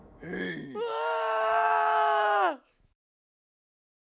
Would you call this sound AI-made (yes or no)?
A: yes